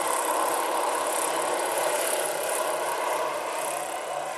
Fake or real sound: fake